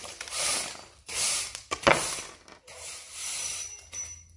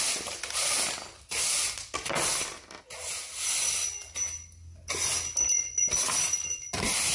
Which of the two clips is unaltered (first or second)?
second